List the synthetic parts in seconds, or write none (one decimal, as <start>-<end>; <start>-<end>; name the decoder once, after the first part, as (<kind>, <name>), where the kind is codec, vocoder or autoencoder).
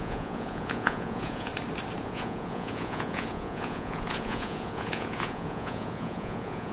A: 0.0-1.5 (vocoder, Vocos); 2.0-6.7